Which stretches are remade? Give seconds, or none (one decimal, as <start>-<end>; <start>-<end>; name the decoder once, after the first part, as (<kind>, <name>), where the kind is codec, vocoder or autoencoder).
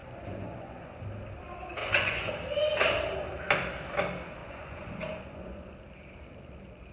0.0-1.1 (vocoder, Vocos); 1.8-2.3; 4.4-5.7